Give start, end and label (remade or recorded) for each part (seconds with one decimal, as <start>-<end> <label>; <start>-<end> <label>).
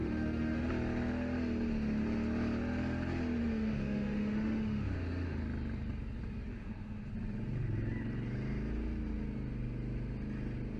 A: 0.0-0.7 remade; 0.7-3.4 recorded; 3.4-5.4 remade; 5.4-6.5 recorded; 6.5-7.1 remade; 7.1-10.8 recorded